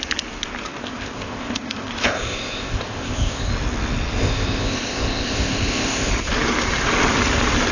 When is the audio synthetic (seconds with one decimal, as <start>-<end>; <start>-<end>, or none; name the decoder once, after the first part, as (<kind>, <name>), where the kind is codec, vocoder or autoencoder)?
0.8-3.5 (codec, ZipCodec); 4.2-6.1